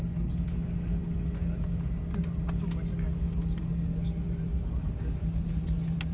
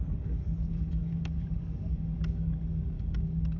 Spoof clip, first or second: second